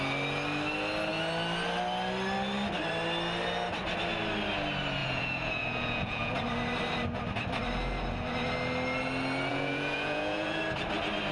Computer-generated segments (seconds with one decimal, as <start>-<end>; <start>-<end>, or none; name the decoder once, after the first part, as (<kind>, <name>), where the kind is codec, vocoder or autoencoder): 5.0-6.3 (vocoder, Vocos); 9.5-10.6